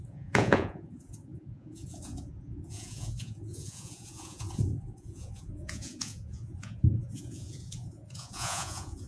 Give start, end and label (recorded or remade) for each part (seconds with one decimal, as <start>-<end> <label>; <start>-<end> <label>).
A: 0.0-9.1 remade